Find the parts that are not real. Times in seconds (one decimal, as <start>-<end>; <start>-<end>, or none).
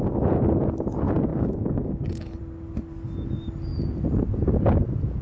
1.3-2.4